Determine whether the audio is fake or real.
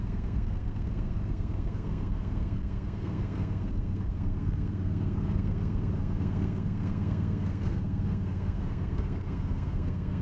fake